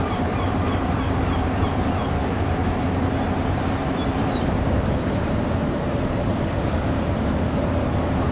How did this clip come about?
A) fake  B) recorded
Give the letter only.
A